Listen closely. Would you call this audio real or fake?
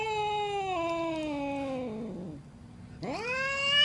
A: real